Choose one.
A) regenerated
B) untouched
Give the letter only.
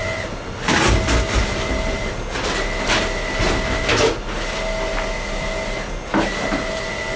B